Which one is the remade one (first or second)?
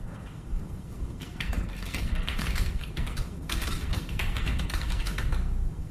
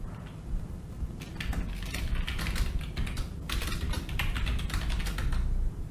first